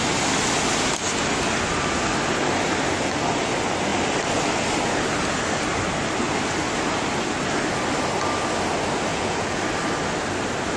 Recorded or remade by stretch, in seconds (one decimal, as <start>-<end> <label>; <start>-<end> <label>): 0.0-9.1 recorded; 9.1-9.6 remade; 9.6-10.8 recorded